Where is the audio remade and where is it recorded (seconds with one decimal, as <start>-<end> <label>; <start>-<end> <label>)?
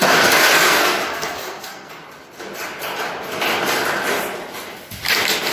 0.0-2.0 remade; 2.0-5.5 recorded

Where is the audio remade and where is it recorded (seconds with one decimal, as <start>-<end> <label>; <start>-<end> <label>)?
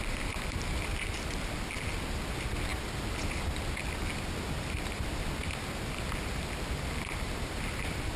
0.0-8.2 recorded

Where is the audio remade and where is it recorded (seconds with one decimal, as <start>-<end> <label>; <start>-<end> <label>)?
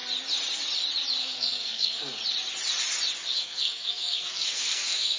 0.0-1.2 recorded; 1.2-2.2 remade; 2.2-3.3 recorded; 3.3-5.2 remade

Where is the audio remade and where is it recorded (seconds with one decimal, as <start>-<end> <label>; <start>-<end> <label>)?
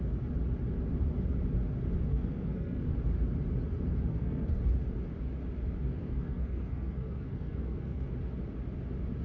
0.0-2.1 recorded; 2.1-2.8 remade; 2.8-4.1 recorded; 4.1-4.6 remade; 4.6-5.9 recorded; 5.9-8.1 remade; 8.1-9.2 recorded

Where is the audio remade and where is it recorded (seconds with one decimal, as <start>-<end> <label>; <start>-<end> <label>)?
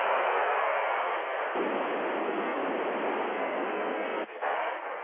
0.0-1.4 remade; 1.4-2.2 recorded; 2.2-2.6 remade; 2.6-3.3 recorded; 3.3-5.0 remade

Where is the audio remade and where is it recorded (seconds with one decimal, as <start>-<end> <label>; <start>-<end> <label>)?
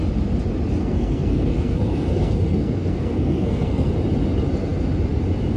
0.0-0.8 recorded; 0.8-3.9 remade; 3.9-5.6 recorded